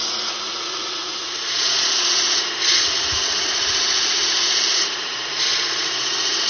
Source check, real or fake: fake